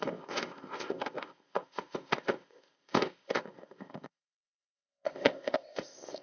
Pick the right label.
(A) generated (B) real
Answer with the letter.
A